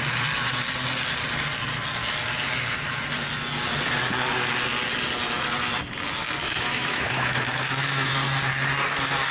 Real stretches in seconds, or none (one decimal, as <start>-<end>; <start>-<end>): 0.0-6.4; 8.1-9.3